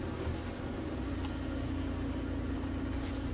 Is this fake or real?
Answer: real